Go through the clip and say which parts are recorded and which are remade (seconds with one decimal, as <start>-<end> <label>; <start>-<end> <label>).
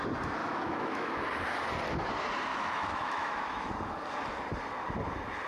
0.0-0.4 recorded; 0.4-1.2 remade; 1.2-2.5 recorded; 2.5-3.7 remade; 3.7-5.5 recorded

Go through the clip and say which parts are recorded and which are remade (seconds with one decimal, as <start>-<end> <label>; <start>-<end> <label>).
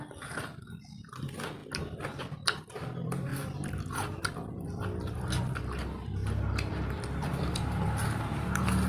0.0-1.6 remade; 1.6-2.6 recorded; 2.6-3.3 remade; 3.3-4.2 recorded; 4.2-6.2 remade; 6.2-6.7 recorded; 6.7-8.9 remade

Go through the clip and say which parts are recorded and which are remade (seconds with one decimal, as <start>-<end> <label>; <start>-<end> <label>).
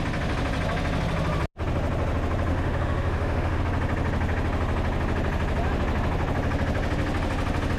0.0-2.5 recorded; 2.5-3.6 remade; 3.6-7.8 recorded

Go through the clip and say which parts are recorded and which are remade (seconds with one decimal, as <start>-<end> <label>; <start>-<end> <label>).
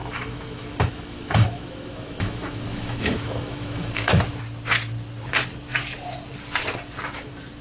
0.0-4.2 remade; 4.2-7.6 recorded